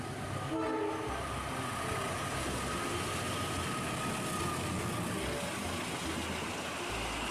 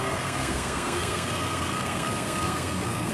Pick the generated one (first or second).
second